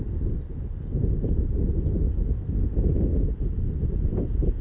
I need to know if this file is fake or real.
real